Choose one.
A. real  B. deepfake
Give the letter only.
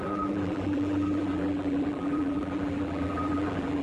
B